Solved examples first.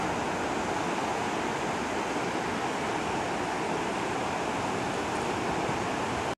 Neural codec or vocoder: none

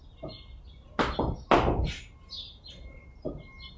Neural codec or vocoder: none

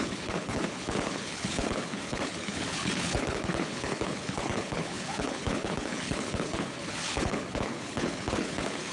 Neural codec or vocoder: codec, HILCodec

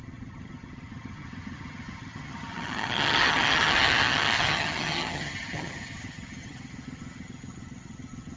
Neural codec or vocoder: vocoder, HiFi-GAN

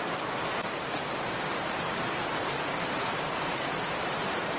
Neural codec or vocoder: vocoder, BigVGAN v2